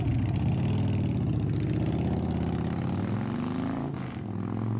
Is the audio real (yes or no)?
yes